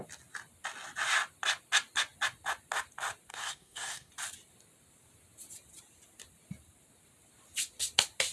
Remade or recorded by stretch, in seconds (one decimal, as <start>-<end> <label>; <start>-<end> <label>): 0.0-3.3 recorded; 3.3-4.1 remade; 4.1-8.3 recorded